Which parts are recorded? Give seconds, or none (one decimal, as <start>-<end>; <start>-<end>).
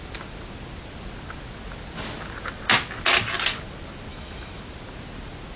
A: 0.0-4.1; 4.6-5.6